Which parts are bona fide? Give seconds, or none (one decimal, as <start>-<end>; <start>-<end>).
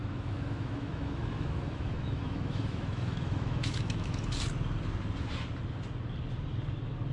4.3-7.1